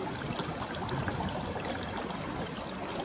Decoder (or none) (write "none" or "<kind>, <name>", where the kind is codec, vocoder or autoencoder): vocoder, BigVGAN v2